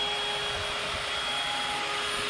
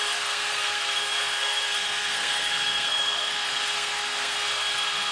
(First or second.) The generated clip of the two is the second